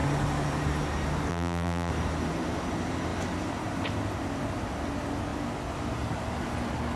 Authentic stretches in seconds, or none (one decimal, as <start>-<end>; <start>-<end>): 0.0-1.3; 1.9-7.0